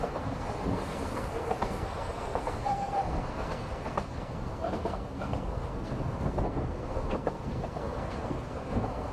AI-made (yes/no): yes